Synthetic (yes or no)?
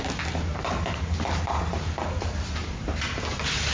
no